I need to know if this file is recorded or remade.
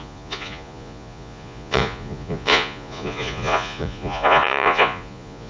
remade